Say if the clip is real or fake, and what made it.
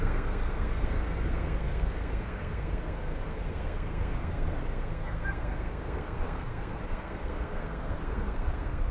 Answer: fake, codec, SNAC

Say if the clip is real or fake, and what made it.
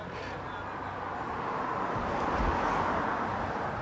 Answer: real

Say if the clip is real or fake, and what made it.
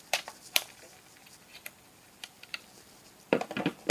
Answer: fake, vocoder, BigVGAN v2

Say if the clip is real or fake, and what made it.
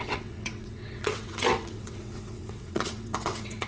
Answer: fake, vocoder, WaveNeXt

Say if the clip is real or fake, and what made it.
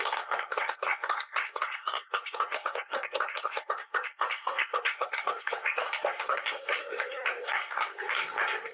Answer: fake, codec, SNAC